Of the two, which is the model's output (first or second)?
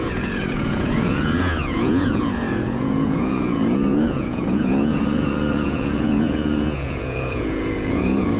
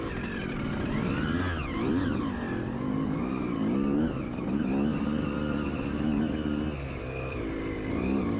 first